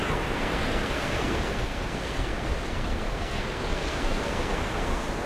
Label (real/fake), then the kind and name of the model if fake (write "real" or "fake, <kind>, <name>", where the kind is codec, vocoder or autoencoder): fake, codec, SNAC